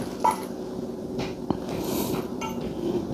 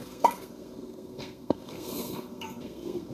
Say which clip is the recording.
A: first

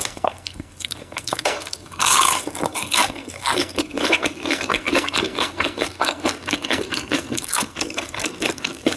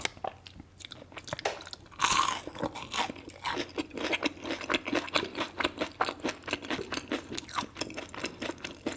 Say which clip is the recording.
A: second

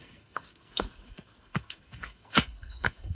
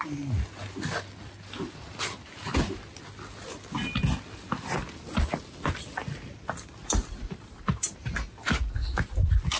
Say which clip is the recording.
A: second